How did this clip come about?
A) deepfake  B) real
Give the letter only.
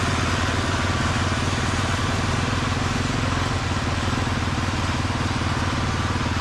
B